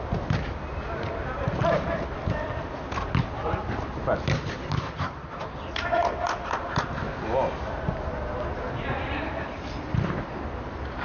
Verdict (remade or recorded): recorded